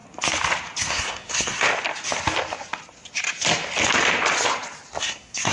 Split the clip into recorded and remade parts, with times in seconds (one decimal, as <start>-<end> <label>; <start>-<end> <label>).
0.0-0.8 recorded; 0.8-1.7 remade; 1.7-5.0 recorded; 5.0-5.5 remade